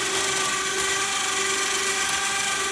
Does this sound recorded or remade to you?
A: recorded